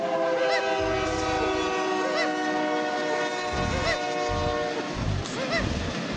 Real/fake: real